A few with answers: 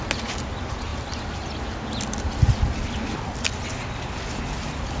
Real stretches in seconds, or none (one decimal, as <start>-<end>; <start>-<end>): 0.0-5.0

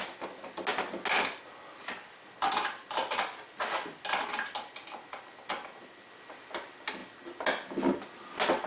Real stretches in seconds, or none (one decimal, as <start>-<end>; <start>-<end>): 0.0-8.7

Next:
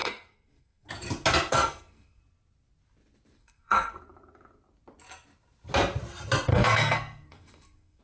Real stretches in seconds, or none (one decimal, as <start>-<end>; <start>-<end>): 0.9-1.5; 2.2-3.4; 4.0-6.5

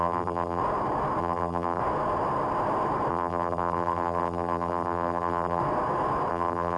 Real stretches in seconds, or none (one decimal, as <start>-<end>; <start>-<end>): 0.6-1.2; 1.8-3.1; 5.6-6.3

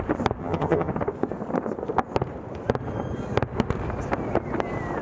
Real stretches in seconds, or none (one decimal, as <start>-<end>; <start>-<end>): 0.0-0.4; 0.9-5.0